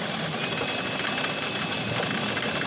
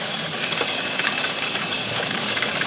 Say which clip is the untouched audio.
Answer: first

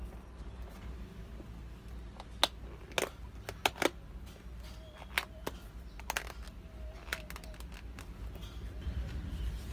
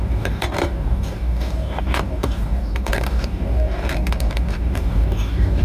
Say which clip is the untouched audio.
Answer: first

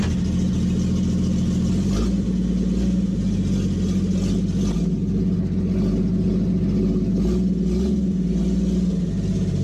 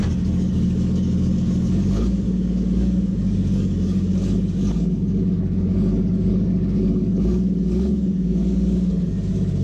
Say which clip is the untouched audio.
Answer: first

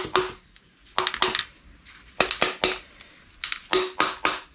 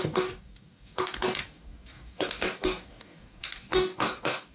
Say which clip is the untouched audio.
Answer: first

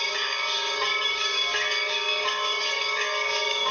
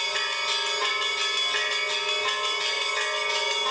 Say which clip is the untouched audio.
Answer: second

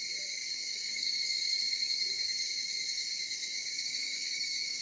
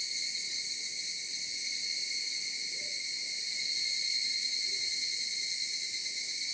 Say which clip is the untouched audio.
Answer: second